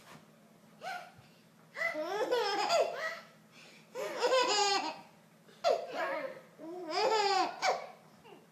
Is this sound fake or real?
real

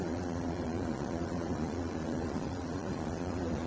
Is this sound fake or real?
fake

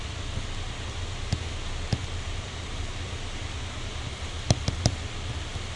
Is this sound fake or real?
real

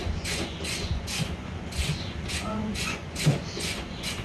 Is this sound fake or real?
fake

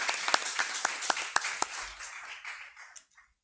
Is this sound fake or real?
real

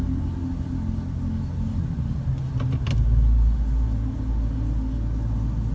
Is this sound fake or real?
real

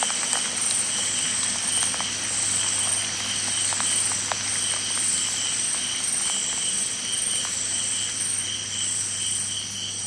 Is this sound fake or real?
real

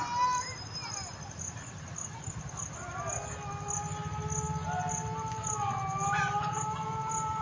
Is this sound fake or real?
real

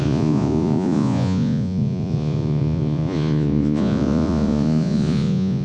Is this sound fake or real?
fake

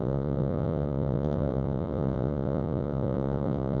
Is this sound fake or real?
fake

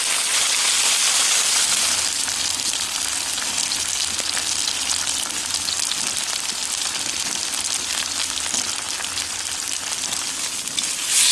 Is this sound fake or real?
real